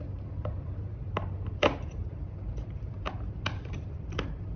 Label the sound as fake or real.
real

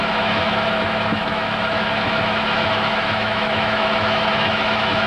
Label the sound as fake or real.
fake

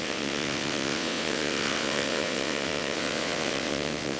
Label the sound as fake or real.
fake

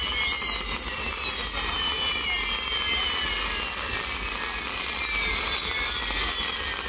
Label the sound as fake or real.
real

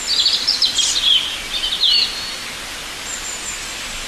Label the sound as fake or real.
real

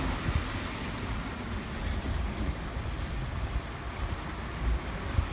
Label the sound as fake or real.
real